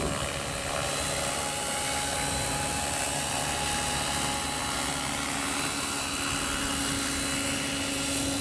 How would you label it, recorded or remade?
recorded